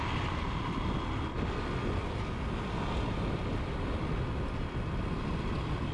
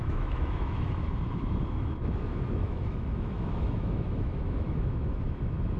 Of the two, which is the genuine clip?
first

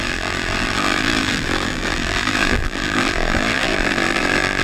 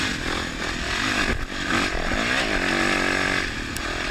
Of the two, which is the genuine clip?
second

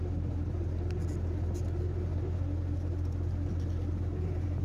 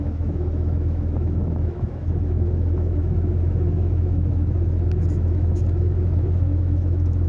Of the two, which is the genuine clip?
first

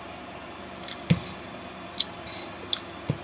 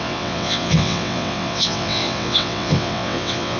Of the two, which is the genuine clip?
first